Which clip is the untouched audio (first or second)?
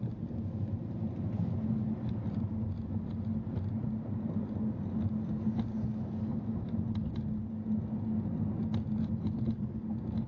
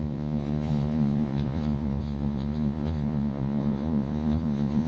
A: first